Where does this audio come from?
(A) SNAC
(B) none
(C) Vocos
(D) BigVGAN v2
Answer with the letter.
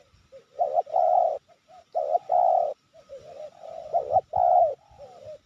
B